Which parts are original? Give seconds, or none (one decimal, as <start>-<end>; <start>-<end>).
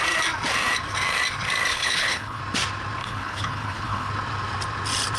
0.0-1.7; 2.4-3.0; 4.1-5.2